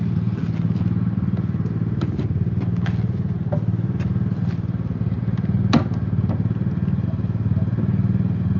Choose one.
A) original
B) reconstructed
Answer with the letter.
A